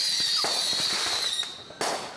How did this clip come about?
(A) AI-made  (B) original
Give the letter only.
A